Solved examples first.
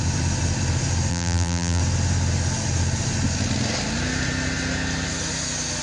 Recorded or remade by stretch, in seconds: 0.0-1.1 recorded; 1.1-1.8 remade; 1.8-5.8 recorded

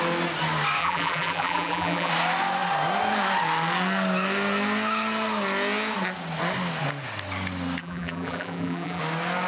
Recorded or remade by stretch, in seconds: 0.0-0.8 recorded; 0.8-2.1 remade; 2.1-7.8 recorded; 7.8-9.0 remade; 9.0-9.5 recorded

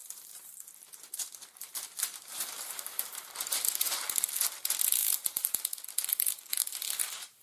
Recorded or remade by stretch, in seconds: 0.0-3.8 remade; 3.8-5.0 recorded; 5.0-5.6 remade; 5.6-7.4 recorded

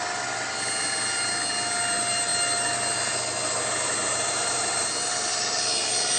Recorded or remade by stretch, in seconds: 0.0-6.2 recorded

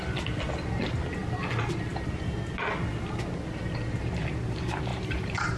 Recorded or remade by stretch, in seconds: 0.0-4.9 recorded; 4.9-5.6 remade

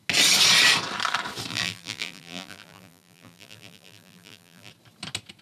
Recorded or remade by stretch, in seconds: 0.0-1.5 recorded; 1.5-4.7 remade; 4.7-5.4 recorded